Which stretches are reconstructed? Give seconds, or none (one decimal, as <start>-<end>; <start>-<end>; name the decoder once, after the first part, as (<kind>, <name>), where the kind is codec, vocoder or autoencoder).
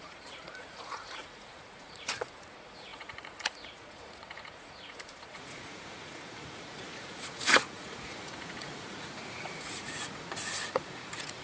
0.0-11.4 (vocoder, Vocos)